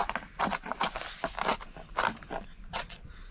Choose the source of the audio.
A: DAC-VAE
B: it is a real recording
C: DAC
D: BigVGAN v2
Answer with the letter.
B